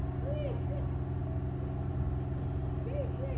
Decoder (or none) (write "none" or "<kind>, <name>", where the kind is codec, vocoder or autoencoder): none